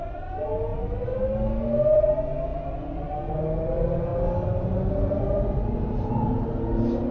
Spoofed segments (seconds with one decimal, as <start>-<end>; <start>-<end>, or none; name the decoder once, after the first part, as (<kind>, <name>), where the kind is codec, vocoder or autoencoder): none